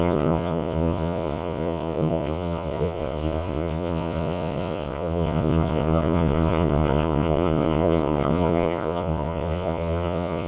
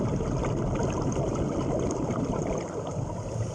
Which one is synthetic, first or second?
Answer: first